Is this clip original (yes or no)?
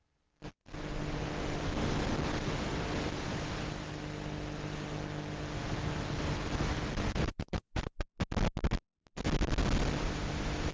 yes